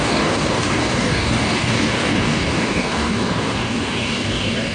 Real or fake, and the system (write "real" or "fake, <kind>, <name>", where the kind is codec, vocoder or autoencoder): fake, codec, DAC